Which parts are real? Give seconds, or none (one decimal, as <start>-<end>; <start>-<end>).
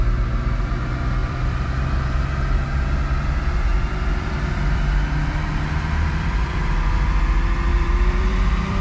0.0-1.2; 1.7-3.7; 6.6-7.7